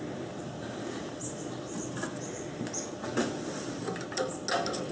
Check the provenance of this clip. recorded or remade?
recorded